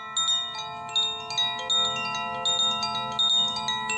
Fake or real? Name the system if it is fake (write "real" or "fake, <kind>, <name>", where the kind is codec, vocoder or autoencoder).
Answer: real